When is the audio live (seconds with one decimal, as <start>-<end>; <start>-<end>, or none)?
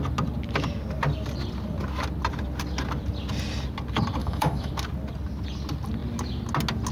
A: 0.0-4.2; 4.7-6.9